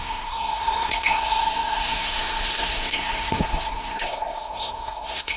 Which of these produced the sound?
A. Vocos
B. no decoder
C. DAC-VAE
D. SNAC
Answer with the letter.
D